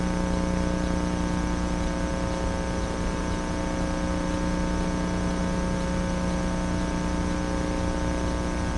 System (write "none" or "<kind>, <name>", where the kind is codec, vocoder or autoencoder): none